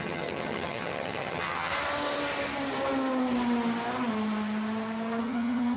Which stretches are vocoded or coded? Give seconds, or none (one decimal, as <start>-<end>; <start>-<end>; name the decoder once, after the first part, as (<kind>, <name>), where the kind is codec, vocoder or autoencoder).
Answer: 0.0-1.7 (vocoder, HiFi-GAN); 5.2-5.8